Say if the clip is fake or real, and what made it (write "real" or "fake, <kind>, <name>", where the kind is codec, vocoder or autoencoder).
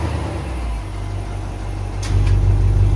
real